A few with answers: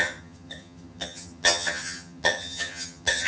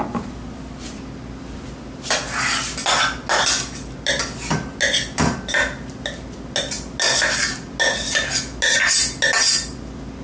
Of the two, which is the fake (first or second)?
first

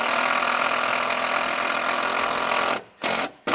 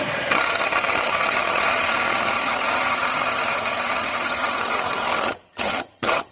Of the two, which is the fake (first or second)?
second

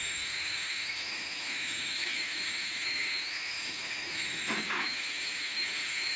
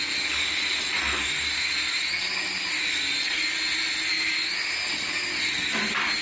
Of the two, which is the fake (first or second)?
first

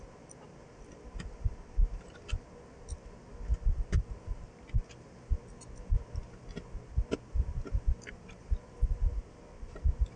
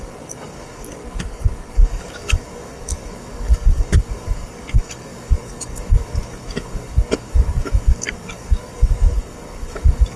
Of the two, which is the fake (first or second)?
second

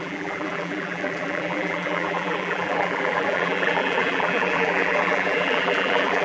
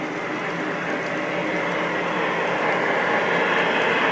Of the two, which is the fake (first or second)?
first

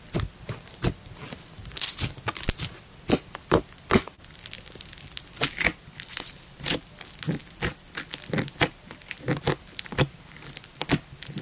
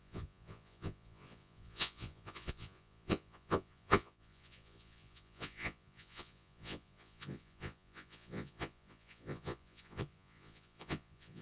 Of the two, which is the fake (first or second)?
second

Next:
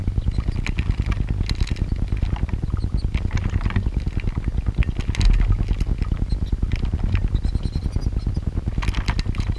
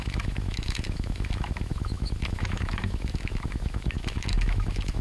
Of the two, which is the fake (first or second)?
second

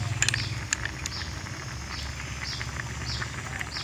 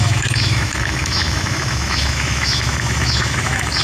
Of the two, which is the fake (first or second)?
second